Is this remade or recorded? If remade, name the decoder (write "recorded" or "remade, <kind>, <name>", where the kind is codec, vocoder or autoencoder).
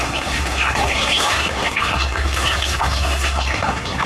remade, codec, SNAC